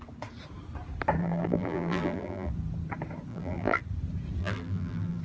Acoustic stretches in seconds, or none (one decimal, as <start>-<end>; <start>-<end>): 0.0-1.2; 2.5-3.3; 3.8-4.4